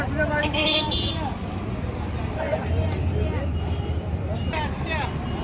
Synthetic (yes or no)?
no